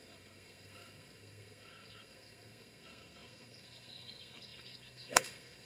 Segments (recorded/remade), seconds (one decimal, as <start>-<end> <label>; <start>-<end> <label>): 0.0-5.7 remade